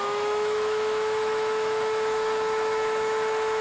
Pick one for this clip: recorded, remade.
remade